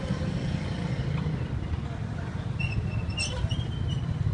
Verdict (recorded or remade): remade